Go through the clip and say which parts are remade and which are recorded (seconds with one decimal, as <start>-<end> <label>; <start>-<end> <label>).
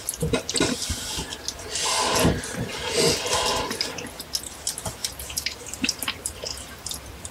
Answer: 0.0-2.7 recorded; 2.7-3.4 remade; 3.4-5.0 recorded; 5.0-7.3 remade